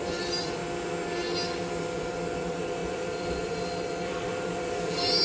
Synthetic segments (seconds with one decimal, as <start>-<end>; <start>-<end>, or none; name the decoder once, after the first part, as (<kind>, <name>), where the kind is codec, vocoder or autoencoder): 0.0-0.6 (vocoder, BigVGAN v2); 1.8-5.2